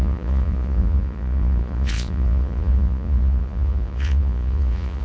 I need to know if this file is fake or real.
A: fake